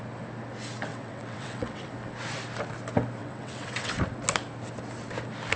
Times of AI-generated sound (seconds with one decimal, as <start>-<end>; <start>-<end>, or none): 0.9-1.9; 3.2-3.9